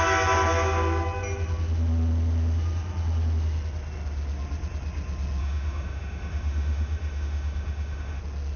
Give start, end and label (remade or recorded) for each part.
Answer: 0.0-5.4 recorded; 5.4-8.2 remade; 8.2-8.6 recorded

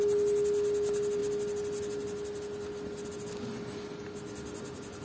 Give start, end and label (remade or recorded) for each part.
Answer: 0.0-5.0 recorded

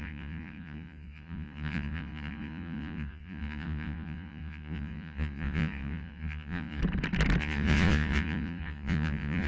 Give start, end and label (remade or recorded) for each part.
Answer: 0.0-6.8 remade; 6.8-7.4 recorded; 7.4-9.5 remade